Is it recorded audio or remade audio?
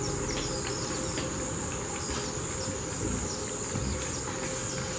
recorded